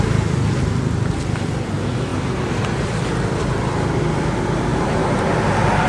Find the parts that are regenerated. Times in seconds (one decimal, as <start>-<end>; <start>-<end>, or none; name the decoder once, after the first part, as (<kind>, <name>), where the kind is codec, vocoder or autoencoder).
4.7-5.2 (vocoder, BigVGAN v2)